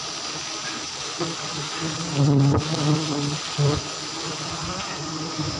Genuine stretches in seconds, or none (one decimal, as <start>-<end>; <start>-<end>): 0.0-4.6